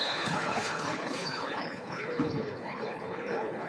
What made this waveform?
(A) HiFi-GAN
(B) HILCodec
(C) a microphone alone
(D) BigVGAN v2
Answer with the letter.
B